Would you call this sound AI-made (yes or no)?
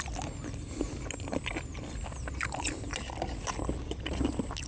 no